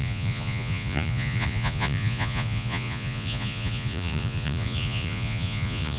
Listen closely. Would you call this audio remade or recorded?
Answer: remade